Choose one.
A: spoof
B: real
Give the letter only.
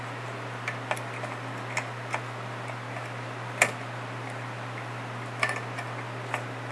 B